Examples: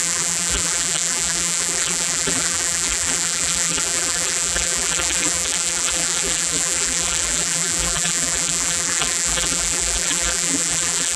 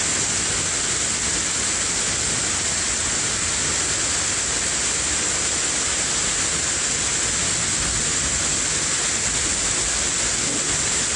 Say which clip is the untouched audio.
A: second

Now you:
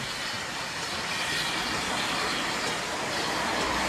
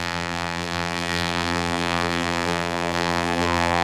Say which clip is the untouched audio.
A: first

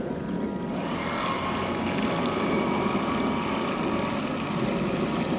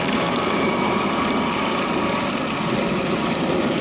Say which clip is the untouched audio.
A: first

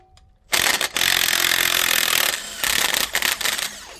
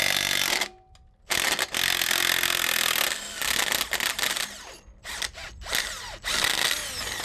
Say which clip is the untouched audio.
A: second